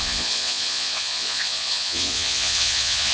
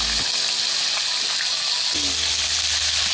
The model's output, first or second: first